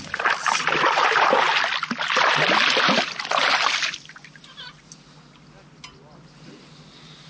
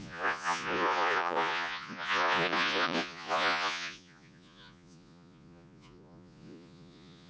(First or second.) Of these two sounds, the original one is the first